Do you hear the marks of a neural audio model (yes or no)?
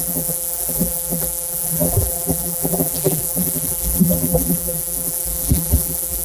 yes